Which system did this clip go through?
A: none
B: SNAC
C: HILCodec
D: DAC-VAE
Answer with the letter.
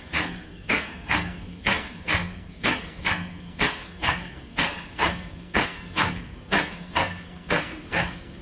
B